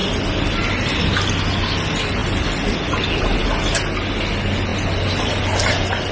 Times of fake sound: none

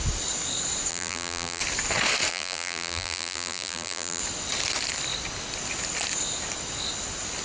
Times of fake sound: 0.9-1.6; 2.3-4.2

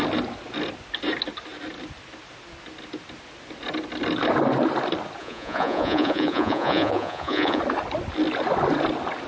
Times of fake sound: 5.2-7.6

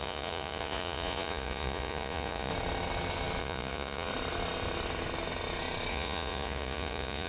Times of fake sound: 0.0-2.5; 3.4-4.1; 5.9-7.3

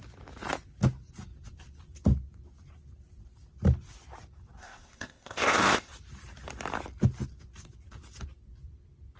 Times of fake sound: 4.6-5.9

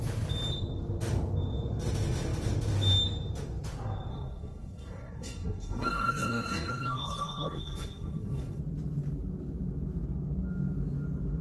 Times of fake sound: 4.1-8.6